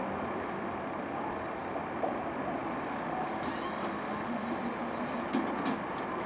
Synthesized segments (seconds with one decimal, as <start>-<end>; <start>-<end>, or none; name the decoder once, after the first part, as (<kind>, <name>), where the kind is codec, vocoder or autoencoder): none